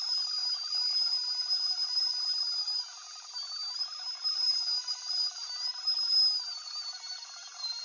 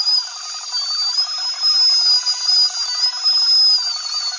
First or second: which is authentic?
second